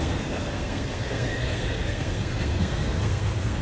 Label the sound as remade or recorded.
remade